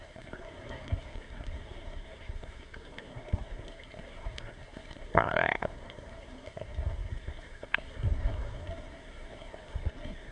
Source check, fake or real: fake